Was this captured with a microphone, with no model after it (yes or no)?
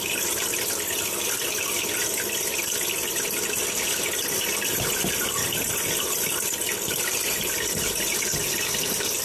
no